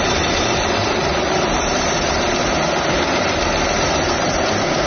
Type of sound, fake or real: real